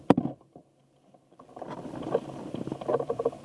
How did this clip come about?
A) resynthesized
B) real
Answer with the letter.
B